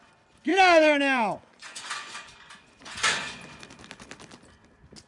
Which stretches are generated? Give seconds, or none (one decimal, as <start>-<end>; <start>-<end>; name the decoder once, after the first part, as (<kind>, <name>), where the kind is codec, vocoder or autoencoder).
0.5-3.6 (vocoder, Vocos)